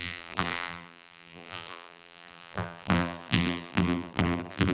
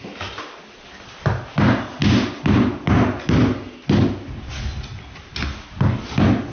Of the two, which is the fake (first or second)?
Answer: first